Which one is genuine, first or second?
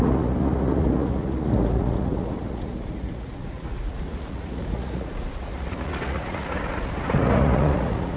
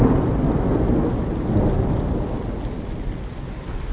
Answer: second